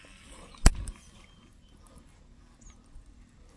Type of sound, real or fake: real